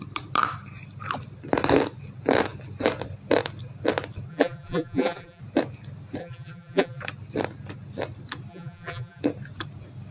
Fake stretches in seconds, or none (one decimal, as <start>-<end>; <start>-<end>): 4.3-5.4; 6.2-7.0; 8.5-9.2